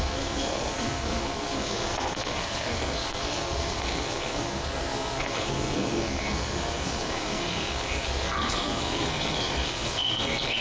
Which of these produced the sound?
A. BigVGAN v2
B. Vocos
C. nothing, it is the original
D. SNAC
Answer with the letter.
D